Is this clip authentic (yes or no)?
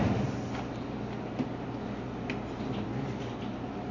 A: yes